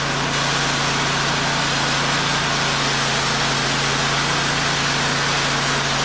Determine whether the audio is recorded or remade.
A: recorded